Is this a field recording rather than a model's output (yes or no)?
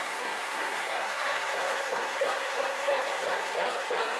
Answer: no